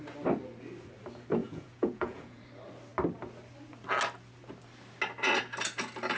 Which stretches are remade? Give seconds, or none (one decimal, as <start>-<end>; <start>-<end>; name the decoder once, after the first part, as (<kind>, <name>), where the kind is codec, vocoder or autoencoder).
1.4-2.4 (vocoder, Vocos)